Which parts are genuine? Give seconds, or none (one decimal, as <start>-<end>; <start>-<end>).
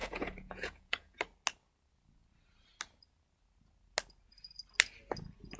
1.2-5.6